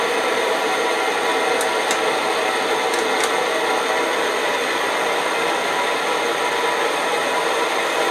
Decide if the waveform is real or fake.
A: real